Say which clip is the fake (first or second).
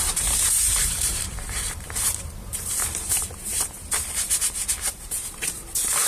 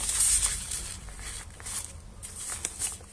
first